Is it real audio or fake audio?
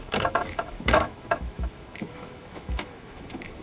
fake